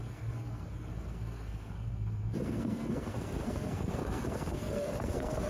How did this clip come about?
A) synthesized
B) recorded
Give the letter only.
A